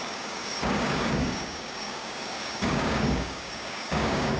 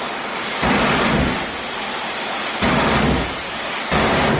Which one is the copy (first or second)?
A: first